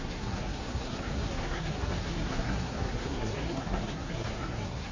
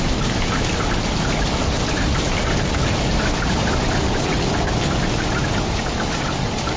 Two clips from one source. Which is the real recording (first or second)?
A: second